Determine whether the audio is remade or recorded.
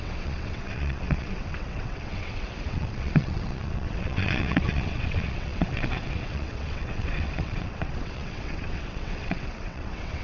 remade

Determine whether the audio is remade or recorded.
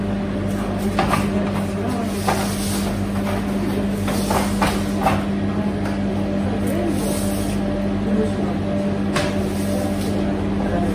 recorded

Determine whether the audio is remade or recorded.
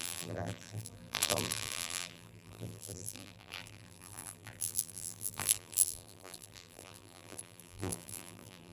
remade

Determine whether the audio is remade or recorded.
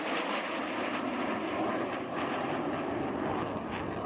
recorded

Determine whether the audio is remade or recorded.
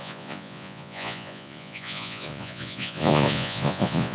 remade